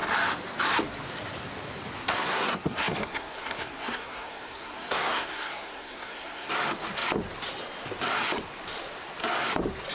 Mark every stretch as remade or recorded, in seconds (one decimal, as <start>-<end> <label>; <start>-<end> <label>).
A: 0.0-2.0 recorded; 2.0-6.5 remade; 6.5-9.9 recorded